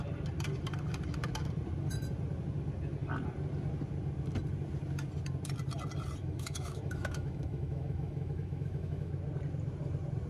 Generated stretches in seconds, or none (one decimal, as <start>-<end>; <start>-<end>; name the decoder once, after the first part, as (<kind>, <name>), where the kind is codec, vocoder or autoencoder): 6.2-9.1 (autoencoder, DAC-VAE)